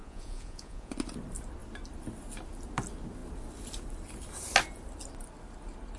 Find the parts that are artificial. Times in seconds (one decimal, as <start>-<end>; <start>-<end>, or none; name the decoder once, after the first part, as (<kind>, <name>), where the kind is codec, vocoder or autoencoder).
0.0-0.9 (vocoder, Vocos)